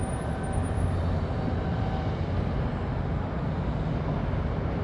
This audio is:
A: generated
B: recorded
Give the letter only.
B